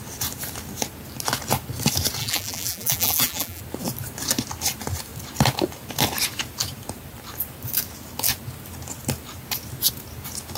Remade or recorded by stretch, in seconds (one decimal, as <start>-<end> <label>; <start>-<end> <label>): 0.0-2.2 recorded; 2.2-3.6 remade; 3.6-10.6 recorded